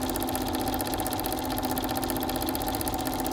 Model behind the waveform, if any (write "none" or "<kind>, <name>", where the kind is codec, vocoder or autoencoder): none